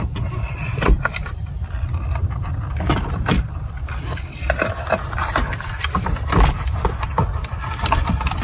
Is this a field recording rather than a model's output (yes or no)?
no